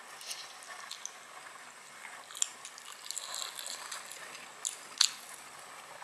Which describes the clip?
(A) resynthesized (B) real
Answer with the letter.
B